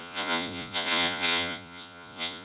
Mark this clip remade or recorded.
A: remade